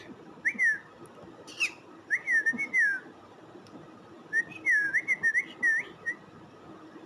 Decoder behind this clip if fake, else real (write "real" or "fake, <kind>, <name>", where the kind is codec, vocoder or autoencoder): real